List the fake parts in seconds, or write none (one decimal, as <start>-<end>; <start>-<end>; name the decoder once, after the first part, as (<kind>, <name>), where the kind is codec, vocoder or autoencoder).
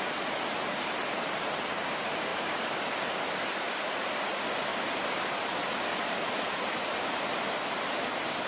2.3-3.7 (vocoder, BigVGAN v2); 4.7-5.5